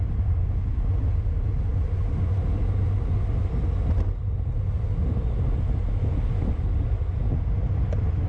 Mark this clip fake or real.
real